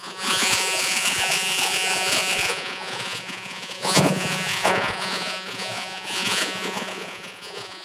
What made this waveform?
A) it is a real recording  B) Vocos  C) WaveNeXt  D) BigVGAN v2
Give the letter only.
B